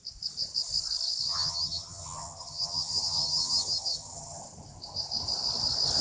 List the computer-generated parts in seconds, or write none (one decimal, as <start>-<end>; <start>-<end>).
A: 1.3-4.4